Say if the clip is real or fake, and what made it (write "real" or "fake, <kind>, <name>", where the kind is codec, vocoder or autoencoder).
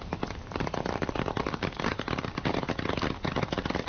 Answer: real